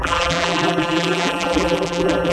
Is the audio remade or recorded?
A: remade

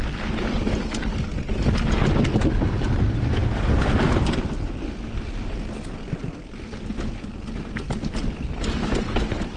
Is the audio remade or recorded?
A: recorded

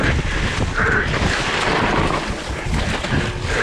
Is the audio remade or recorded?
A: recorded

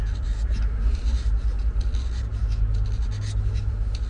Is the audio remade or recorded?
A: recorded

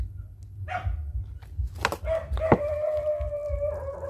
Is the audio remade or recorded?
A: recorded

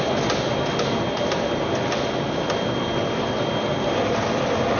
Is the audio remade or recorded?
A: recorded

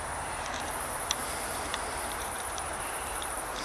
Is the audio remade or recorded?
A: remade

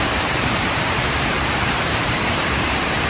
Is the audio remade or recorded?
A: remade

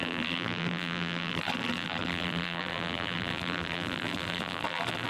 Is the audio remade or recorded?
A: remade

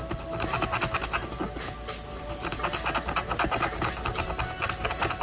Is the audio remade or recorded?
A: recorded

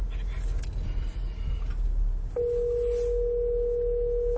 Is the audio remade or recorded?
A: recorded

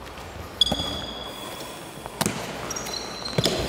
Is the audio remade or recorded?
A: recorded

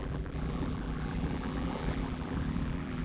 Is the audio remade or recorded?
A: remade